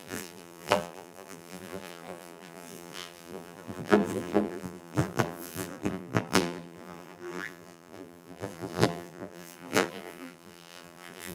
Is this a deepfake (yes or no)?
yes